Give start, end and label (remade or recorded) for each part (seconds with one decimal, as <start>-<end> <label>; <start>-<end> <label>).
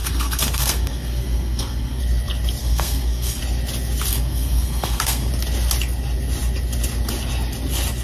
0.0-2.0 remade; 2.0-2.6 recorded; 2.6-3.4 remade; 3.4-4.1 recorded; 4.1-5.3 remade; 5.3-8.0 recorded